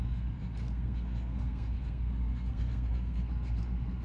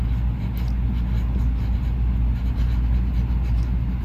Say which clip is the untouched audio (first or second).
second